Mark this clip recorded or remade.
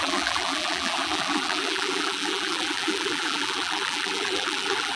remade